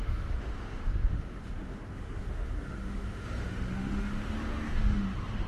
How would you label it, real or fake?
fake